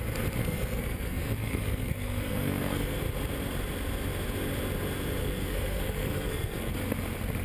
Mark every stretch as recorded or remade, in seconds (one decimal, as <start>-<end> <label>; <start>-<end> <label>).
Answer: 0.0-0.4 recorded; 0.4-3.0 remade; 3.0-5.2 recorded; 5.2-6.7 remade; 6.7-7.4 recorded